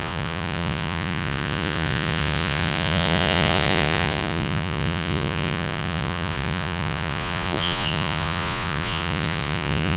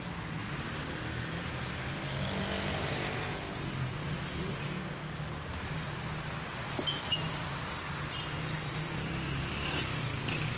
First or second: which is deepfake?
first